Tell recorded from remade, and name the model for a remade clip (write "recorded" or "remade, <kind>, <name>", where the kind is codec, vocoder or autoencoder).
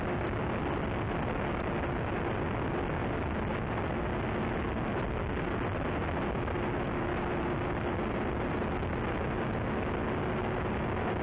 recorded